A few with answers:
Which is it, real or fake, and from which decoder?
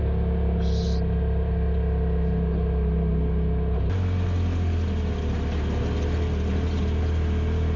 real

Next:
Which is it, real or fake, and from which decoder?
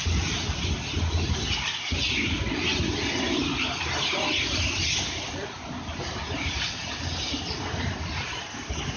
real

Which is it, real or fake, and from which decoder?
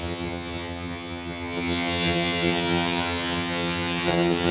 fake, vocoder, HiFi-GAN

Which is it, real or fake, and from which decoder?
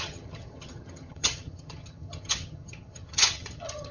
fake, vocoder, HiFi-GAN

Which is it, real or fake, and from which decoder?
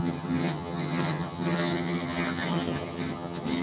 fake, vocoder, HiFi-GAN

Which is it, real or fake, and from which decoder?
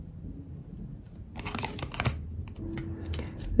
real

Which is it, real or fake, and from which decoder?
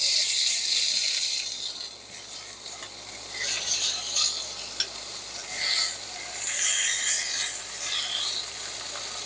real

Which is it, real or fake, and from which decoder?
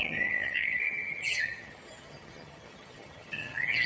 fake, vocoder, HiFi-GAN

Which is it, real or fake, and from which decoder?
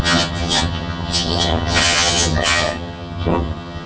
fake, vocoder, HiFi-GAN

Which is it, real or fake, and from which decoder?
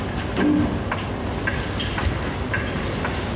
real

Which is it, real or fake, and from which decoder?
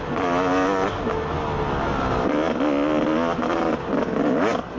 real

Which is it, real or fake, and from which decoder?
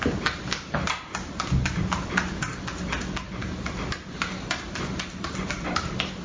real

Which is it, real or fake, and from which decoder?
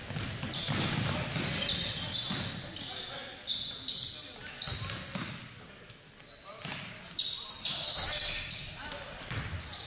real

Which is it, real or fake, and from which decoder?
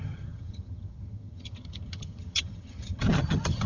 fake, vocoder, HiFi-GAN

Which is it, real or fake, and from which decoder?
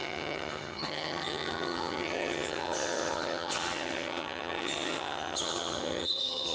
fake, vocoder, HiFi-GAN